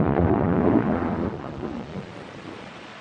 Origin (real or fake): fake